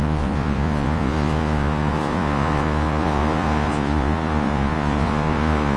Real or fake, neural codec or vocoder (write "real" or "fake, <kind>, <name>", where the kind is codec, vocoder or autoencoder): fake, vocoder, Vocos